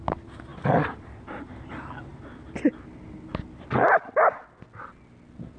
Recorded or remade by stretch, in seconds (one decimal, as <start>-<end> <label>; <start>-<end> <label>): 0.0-5.6 recorded